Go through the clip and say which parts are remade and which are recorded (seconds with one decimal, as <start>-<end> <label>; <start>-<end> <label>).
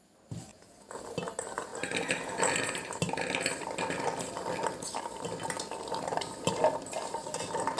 0.0-0.5 recorded; 0.5-1.0 remade; 1.0-7.8 recorded